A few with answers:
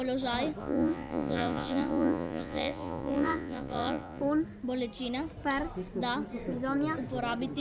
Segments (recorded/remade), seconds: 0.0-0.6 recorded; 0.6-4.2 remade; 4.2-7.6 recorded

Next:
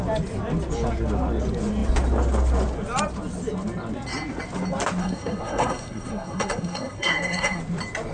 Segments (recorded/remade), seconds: 0.0-5.0 recorded; 5.0-7.6 remade; 7.6-8.1 recorded

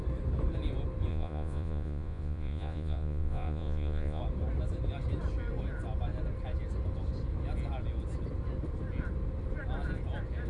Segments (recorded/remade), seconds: 0.0-1.1 recorded; 1.1-4.2 remade; 4.2-10.5 recorded

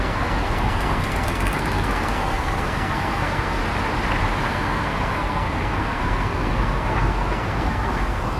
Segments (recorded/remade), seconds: 0.0-3.6 remade; 3.6-4.4 recorded; 4.4-8.4 remade

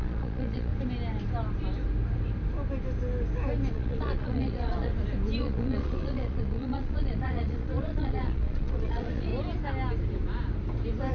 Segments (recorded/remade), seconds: 0.0-0.7 remade; 0.7-3.7 recorded; 3.7-4.9 remade; 4.9-5.4 recorded; 5.4-9.3 remade; 9.3-11.1 recorded

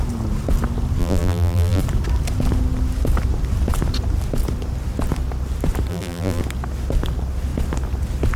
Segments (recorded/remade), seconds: 0.0-1.0 recorded; 1.0-1.8 remade; 1.8-5.9 recorded; 5.9-6.4 remade; 6.4-8.4 recorded

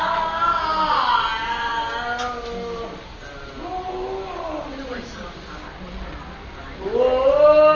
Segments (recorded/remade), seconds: 0.0-7.7 recorded